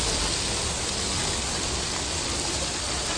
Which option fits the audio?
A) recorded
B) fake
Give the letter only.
A